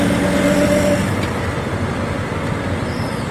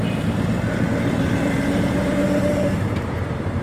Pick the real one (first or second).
first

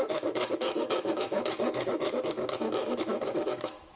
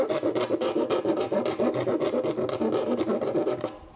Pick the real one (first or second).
second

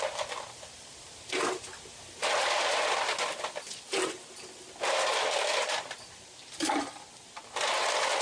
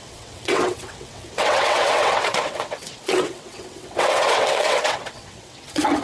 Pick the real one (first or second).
first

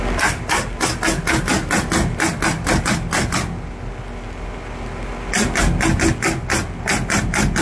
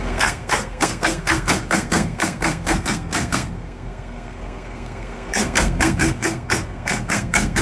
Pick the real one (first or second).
first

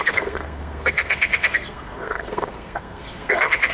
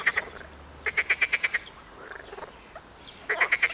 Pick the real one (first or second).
second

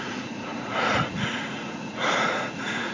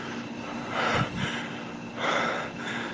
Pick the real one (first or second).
second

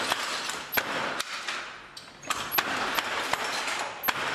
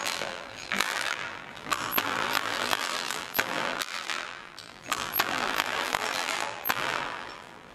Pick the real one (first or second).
first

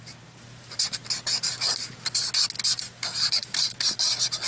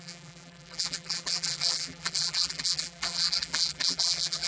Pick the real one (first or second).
first